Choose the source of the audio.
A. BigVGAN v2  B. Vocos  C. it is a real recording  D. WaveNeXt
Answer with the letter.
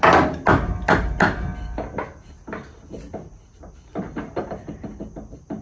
C